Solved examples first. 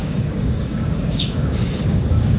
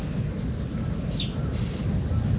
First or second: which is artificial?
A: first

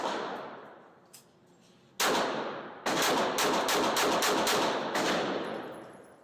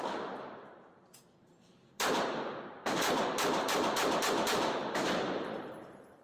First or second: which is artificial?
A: second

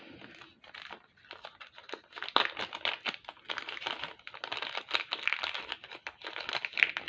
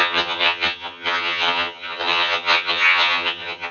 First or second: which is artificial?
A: second